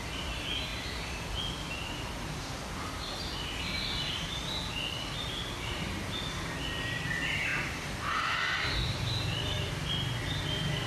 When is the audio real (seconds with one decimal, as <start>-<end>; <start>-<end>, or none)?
0.0-0.7; 2.4-7.5; 9.7-10.9